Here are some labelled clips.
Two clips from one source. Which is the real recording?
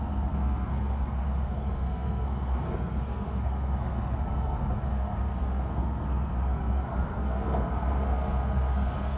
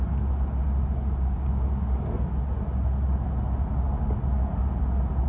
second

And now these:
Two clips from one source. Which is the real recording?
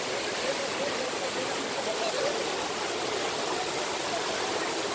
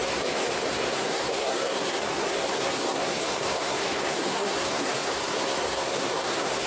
first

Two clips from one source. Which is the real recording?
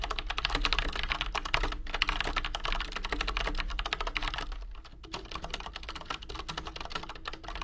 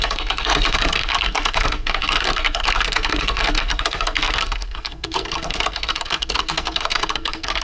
first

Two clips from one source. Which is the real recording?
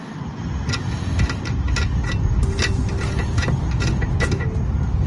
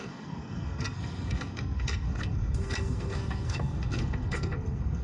first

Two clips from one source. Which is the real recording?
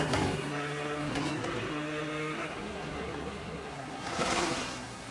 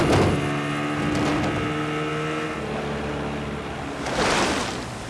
second